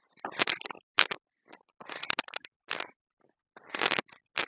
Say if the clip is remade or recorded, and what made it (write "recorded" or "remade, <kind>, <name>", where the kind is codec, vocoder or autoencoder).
recorded